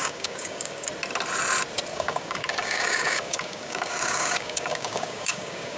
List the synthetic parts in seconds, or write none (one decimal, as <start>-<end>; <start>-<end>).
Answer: 0.0-0.9; 1.9-5.8